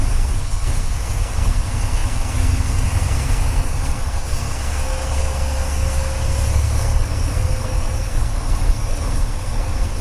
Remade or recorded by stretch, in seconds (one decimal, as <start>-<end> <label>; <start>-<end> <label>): 0.0-10.0 remade